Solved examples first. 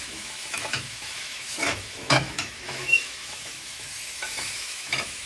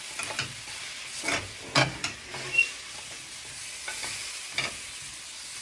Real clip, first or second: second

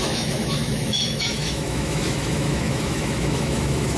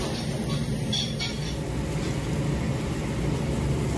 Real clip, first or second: second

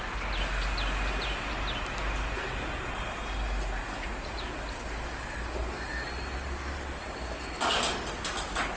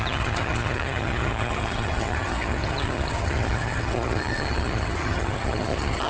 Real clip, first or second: first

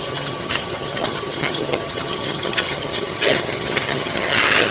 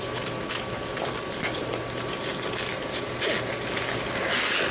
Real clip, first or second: second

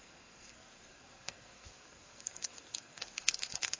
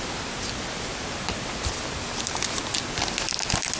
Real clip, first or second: second